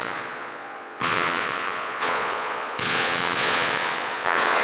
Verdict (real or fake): fake